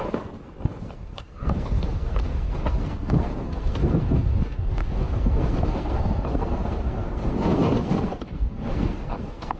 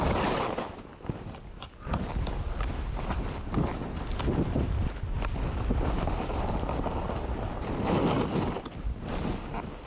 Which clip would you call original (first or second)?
second